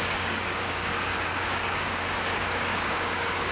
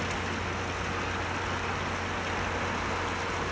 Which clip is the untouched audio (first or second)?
second